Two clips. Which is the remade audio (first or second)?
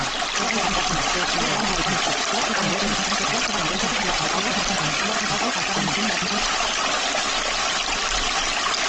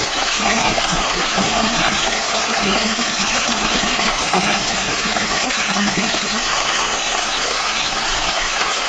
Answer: second